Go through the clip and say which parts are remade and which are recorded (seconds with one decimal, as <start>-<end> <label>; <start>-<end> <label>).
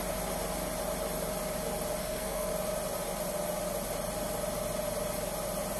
0.0-2.0 recorded; 2.0-2.5 remade; 2.5-5.8 recorded